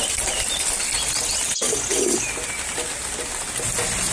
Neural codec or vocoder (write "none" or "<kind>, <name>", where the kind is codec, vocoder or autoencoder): none